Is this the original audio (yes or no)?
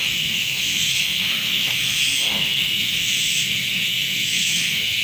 no